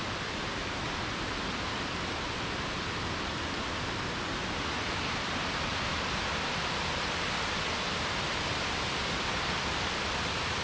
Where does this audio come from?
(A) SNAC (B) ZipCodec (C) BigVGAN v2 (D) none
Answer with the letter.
D